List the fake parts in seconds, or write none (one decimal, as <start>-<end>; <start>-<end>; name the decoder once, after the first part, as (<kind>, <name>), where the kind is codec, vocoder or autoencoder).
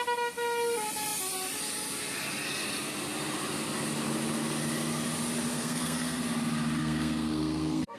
5.5-6.2 (codec, SNAC); 6.8-8.0